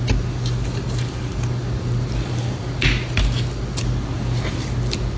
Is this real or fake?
real